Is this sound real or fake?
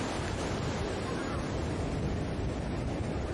real